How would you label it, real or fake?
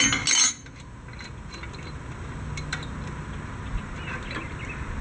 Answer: real